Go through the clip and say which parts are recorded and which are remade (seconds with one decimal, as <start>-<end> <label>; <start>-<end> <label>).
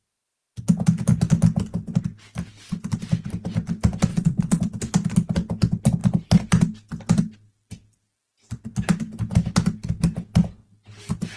0.0-4.1 recorded; 4.1-4.6 remade; 4.6-11.4 recorded